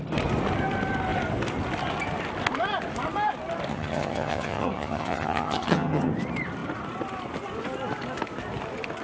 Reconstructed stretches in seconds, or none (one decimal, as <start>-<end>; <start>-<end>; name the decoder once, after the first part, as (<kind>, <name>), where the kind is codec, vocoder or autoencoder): 3.7-6.1 (vocoder, HiFi-GAN)